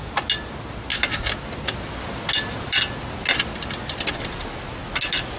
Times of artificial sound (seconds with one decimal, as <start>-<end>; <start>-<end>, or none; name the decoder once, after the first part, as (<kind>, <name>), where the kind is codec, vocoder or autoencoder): none